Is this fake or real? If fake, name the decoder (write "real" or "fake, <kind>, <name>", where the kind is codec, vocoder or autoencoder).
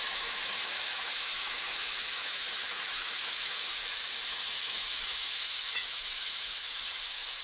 fake, autoencoder, DAC-VAE